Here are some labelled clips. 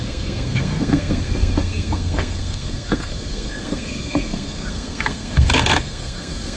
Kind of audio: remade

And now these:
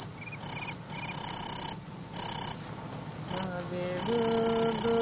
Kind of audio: recorded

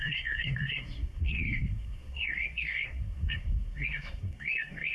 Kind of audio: remade